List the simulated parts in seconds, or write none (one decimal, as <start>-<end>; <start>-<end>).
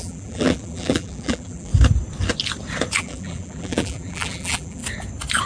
0.0-1.7; 3.0-4.8